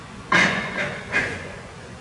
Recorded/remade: remade